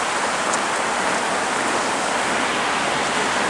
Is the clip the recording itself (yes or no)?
yes